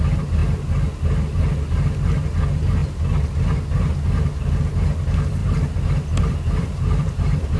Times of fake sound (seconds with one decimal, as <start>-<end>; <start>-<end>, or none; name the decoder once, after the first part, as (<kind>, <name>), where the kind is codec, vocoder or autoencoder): 5.4-7.6 (vocoder, BigVGAN v2)